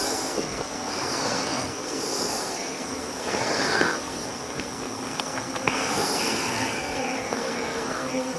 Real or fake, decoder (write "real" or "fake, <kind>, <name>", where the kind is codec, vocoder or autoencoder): fake, codec, SNAC